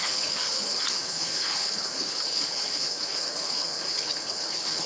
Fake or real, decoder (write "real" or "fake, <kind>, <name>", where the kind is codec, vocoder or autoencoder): fake, codec, HILCodec